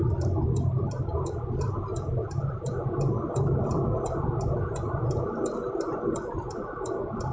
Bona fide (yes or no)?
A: yes